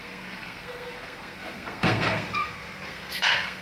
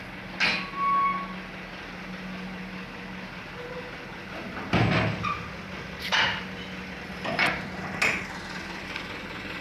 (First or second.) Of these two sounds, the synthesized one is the first